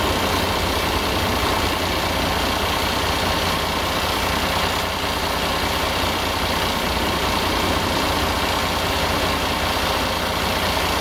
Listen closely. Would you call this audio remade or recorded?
recorded